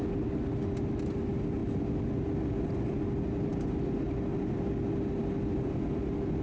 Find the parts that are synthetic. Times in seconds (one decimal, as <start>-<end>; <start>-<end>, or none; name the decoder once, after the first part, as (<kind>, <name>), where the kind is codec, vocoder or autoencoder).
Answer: none